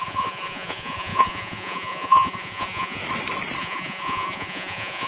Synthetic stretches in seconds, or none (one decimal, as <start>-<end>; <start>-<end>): 0.0-3.0; 3.6-5.1